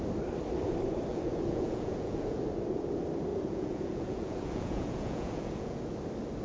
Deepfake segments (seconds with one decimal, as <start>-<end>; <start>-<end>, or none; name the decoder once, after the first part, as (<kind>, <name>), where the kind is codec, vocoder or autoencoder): 1.1-2.4 (vocoder, Vocos); 3.3-5.8